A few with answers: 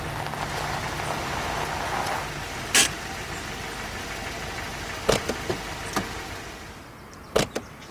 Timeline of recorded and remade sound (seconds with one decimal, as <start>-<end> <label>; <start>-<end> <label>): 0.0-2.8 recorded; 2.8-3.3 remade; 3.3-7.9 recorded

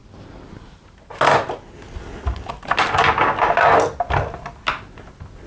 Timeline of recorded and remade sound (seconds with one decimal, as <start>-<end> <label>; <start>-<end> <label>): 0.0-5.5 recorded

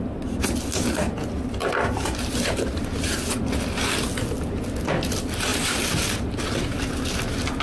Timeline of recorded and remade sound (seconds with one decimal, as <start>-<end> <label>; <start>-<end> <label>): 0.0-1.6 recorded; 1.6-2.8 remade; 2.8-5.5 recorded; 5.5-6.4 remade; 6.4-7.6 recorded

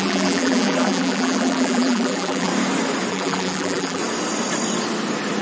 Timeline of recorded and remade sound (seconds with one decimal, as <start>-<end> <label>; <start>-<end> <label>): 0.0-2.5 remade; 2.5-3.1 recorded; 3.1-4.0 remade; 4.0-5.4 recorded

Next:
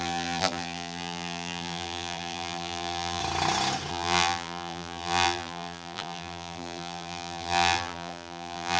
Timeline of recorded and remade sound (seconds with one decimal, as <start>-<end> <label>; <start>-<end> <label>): 0.0-3.2 remade; 3.2-3.9 recorded; 3.9-8.8 remade